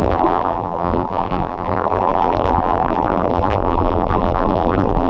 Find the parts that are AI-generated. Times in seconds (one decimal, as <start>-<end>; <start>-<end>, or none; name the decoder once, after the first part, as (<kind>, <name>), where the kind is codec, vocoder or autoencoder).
0.0-5.1 (vocoder, BigVGAN v2)